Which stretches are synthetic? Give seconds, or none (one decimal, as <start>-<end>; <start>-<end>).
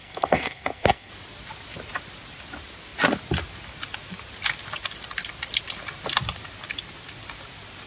0.0-1.1